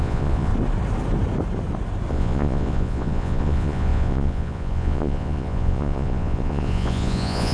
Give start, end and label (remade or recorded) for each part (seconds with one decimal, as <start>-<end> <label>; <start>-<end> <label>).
0.0-0.5 remade; 0.5-2.1 recorded; 2.1-7.5 remade